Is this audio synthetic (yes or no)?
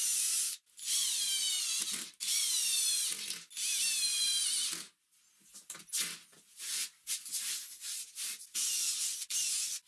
no